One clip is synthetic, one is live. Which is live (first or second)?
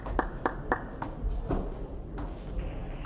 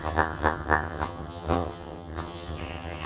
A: first